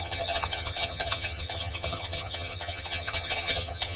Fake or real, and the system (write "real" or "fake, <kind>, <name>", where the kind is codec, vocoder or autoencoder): fake, vocoder, HiFi-GAN